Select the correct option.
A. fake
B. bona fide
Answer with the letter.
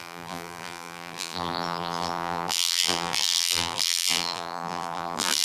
A